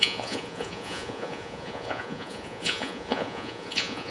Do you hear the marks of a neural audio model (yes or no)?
yes